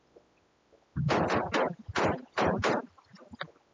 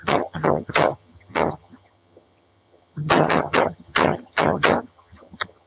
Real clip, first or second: first